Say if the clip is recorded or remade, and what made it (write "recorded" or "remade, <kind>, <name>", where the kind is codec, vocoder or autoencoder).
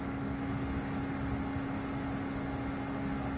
recorded